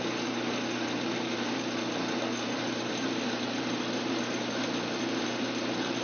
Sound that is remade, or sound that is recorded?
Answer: recorded